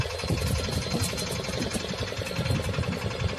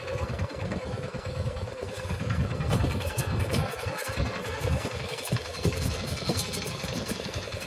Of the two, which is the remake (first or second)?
second